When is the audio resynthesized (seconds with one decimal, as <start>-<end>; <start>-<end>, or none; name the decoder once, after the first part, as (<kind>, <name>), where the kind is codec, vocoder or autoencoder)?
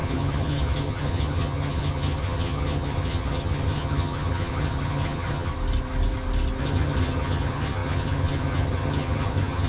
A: 0.0-5.5 (vocoder, HiFi-GAN); 6.6-9.7